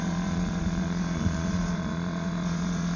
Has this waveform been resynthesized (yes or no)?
yes